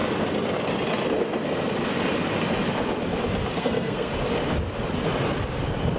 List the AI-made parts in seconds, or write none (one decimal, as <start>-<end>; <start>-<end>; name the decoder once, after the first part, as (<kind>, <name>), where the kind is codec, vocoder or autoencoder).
3.6-4.1 (codec, SNAC)